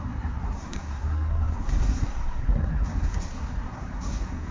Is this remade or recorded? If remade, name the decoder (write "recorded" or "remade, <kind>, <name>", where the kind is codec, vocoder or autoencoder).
remade, codec, SNAC